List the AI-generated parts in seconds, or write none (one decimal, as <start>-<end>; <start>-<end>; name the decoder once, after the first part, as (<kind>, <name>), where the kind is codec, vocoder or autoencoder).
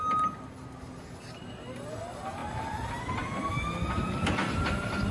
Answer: none